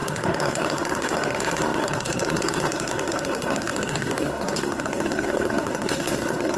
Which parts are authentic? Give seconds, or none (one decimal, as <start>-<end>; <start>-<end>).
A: none